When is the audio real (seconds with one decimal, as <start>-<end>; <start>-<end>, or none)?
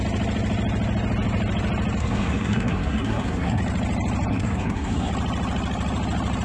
0.0-2.0; 3.6-4.3; 5.1-6.4